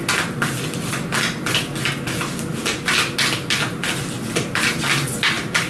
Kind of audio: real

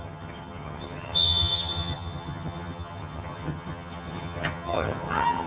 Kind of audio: fake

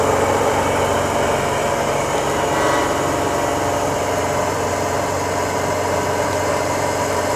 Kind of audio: fake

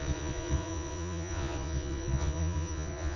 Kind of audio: fake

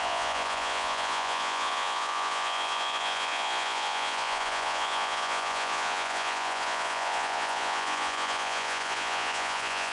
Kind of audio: fake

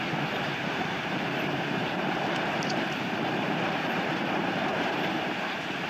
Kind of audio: fake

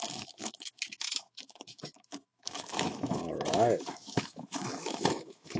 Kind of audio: fake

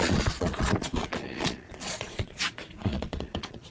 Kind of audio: fake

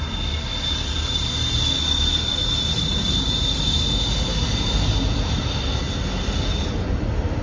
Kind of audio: real